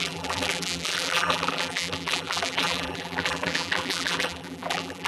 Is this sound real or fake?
fake